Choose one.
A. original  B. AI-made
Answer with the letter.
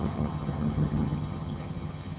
B